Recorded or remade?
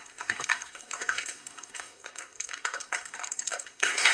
remade